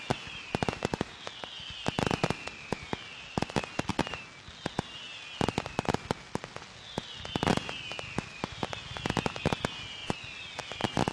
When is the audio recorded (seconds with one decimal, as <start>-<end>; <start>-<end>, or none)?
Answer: 0.0-11.1